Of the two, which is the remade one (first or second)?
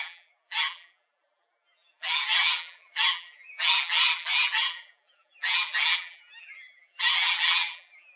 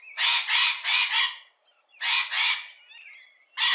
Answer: first